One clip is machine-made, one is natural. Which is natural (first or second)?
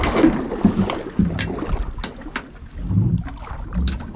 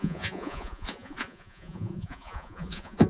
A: first